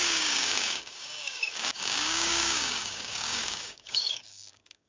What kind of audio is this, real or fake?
fake